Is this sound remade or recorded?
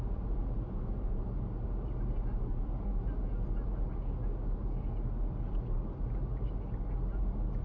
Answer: recorded